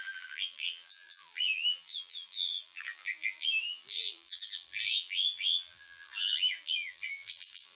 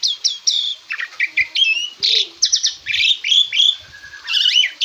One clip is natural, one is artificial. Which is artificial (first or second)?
first